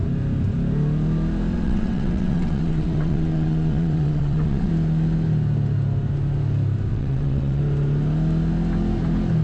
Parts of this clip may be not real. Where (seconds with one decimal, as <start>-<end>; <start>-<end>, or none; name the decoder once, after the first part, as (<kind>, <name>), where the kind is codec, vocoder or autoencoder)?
1.5-4.7 (vocoder, WaveNeXt); 6.9-7.6